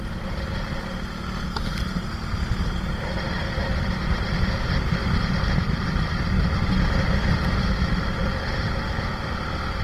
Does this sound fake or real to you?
real